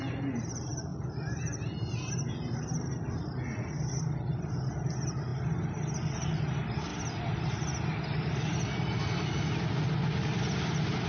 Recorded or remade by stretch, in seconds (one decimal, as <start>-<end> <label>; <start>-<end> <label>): 0.0-5.3 remade; 5.3-6.1 recorded; 6.1-6.9 remade; 6.9-7.4 recorded; 7.4-11.1 remade